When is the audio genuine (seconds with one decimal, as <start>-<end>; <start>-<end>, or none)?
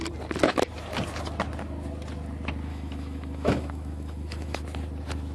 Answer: 0.0-2.7; 4.6-5.3